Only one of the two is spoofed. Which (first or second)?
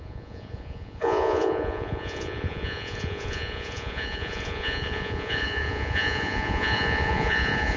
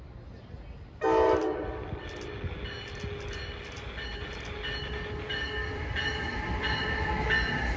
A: first